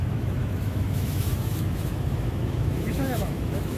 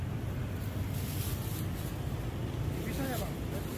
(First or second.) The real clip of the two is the second